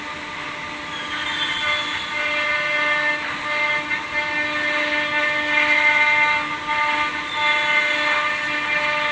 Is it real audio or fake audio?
real